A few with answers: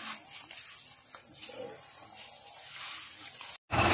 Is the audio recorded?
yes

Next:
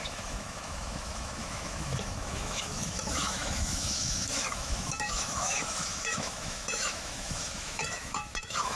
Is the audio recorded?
no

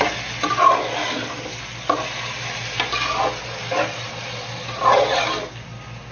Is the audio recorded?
yes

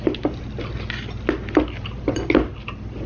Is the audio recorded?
yes